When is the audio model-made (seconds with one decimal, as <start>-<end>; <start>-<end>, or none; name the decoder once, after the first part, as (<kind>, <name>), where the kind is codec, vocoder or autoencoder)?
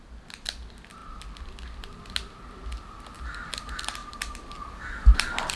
4.0-4.5 (vocoder, BigVGAN v2)